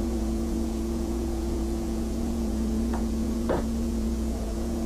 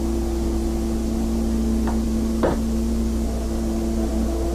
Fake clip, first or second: first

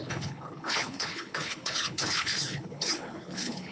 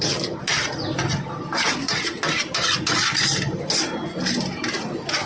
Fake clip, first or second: first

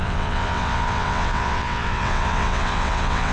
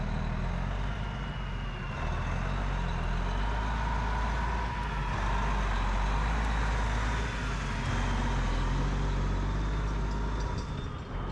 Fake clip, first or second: first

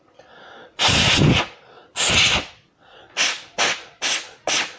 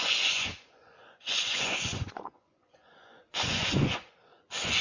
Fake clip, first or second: second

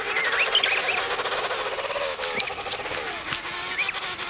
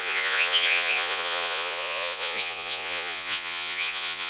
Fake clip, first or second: second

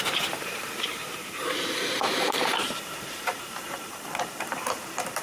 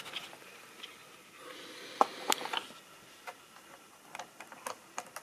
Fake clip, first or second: first